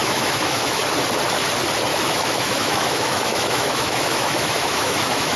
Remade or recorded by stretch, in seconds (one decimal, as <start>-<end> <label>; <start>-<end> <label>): 0.0-0.8 remade; 0.8-1.9 recorded; 1.9-5.4 remade